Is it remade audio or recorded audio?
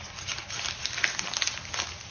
recorded